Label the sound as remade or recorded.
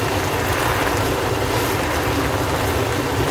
recorded